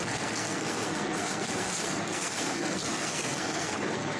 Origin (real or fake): fake